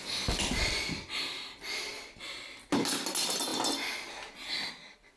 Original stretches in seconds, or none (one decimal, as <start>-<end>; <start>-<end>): 0.0-5.2